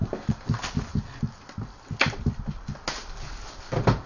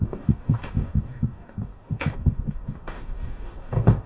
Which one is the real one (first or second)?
first